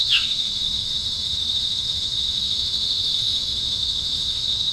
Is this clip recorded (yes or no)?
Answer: no